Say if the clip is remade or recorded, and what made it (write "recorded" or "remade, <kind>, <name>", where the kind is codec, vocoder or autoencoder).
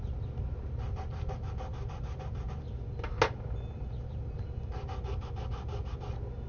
recorded